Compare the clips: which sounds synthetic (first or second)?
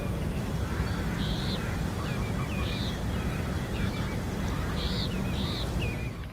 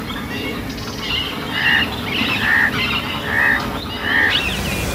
first